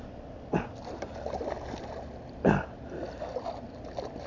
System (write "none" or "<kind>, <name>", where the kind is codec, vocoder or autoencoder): none